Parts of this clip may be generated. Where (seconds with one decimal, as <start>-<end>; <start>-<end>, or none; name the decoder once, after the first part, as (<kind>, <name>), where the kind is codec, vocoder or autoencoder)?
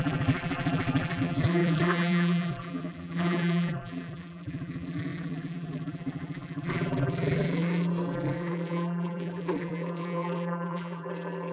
0.0-11.5 (vocoder, BigVGAN v2)